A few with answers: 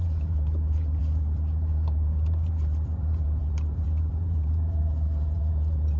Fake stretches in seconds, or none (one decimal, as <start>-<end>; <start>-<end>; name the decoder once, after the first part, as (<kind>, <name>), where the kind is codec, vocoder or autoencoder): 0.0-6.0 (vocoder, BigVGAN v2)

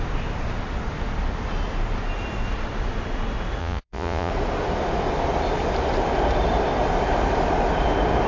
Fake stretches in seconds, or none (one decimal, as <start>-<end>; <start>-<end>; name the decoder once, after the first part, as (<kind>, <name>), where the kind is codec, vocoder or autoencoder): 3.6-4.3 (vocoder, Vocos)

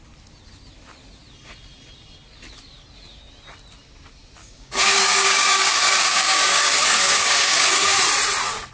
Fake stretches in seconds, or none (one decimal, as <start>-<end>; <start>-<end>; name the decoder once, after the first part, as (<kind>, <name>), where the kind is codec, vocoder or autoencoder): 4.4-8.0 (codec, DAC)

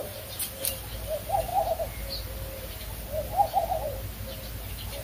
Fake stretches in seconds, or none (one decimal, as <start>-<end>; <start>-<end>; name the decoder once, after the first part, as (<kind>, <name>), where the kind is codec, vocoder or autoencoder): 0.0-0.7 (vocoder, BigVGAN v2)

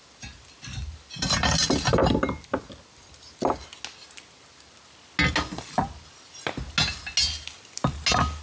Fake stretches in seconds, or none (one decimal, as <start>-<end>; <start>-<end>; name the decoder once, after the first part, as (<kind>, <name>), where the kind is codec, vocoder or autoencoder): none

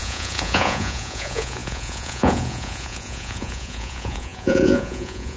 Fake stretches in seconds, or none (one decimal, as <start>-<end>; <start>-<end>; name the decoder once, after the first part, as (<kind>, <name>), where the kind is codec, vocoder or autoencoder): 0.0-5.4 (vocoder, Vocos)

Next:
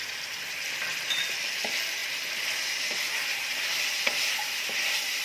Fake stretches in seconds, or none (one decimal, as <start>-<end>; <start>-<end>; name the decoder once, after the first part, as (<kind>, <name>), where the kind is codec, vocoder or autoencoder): 0.0-2.0 (vocoder, BigVGAN v2)